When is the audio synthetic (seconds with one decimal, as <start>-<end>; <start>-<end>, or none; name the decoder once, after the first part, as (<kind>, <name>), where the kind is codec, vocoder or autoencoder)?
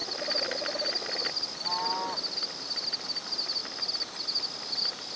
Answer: none